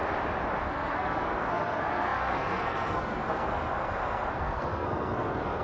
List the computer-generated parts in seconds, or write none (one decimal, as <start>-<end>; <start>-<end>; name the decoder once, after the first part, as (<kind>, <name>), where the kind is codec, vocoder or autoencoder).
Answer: 0.6-5.6 (codec, SNAC)